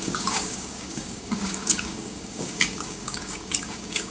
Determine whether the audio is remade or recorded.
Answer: remade